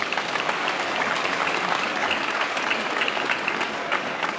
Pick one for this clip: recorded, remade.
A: remade